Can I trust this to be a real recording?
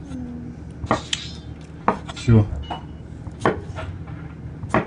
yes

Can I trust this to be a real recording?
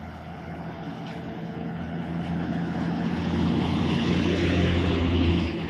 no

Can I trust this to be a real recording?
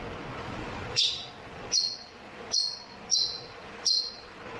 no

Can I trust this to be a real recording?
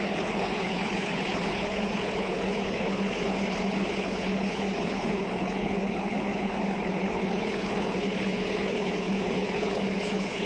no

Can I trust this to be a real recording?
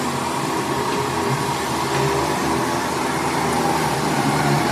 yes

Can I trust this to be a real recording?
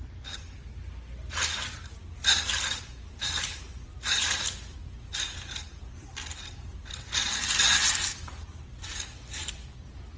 yes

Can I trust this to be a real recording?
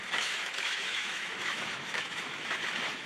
no